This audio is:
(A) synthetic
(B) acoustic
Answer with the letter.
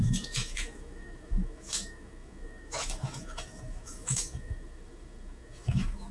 A